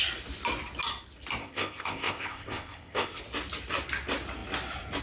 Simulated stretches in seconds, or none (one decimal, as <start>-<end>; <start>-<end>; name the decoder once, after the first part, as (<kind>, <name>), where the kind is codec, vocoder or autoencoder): 1.4-3.2 (codec, ZipCodec)